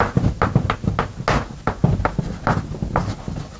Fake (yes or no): no